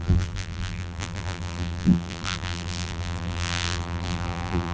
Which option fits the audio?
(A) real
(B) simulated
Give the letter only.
B